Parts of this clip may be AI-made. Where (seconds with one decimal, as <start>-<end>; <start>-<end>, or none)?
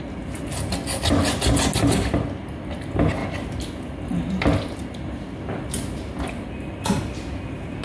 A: none